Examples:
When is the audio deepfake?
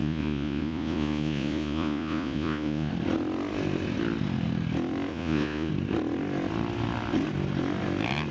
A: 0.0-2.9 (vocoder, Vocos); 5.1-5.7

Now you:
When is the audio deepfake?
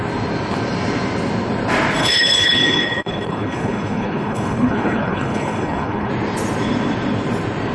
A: 2.0-6.1 (codec, HILCodec)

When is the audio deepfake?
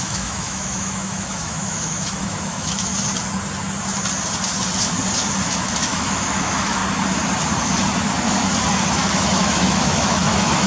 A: 0.0-2.9 (autoencoder, DAC-VAE); 5.4-6.8; 8.9-10.7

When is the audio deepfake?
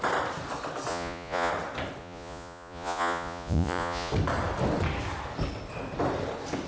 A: 0.9-1.5 (vocoder, Vocos); 2.0-4.1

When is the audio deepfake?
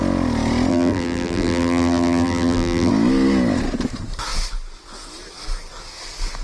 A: 0.7-2.9 (vocoder, BigVGAN v2)